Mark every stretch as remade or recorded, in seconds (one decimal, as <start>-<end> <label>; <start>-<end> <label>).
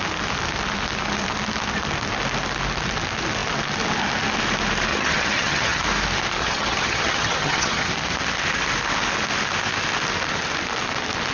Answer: 0.0-4.9 recorded; 4.9-5.8 remade; 5.8-6.4 recorded; 6.4-7.9 remade; 7.9-11.3 recorded